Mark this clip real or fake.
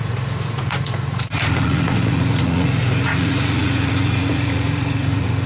fake